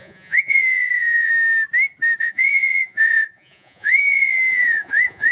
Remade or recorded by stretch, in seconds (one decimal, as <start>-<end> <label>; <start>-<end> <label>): 0.0-1.3 remade; 1.3-2.2 recorded; 2.2-5.3 remade